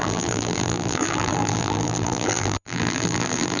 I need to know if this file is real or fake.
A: fake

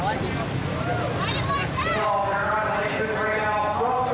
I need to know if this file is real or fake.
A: real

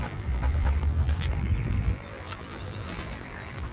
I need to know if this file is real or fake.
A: fake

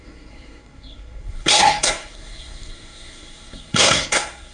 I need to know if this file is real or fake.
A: fake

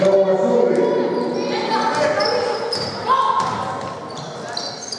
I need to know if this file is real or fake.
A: real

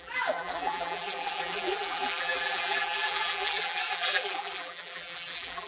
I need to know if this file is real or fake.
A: fake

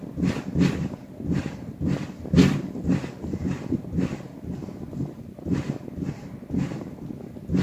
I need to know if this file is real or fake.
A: real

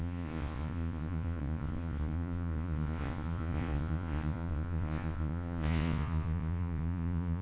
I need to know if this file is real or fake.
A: fake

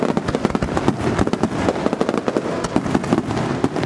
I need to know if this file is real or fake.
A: real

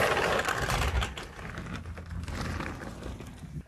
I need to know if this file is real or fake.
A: real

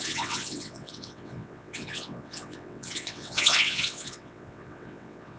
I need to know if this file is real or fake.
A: fake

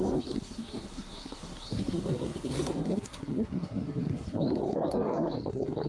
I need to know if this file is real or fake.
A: fake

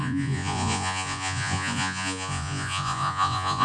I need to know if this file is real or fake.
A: fake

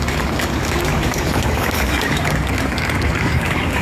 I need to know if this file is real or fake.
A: fake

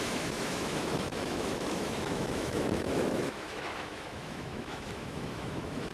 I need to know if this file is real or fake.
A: fake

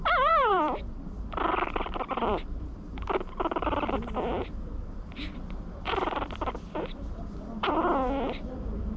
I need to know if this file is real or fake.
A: fake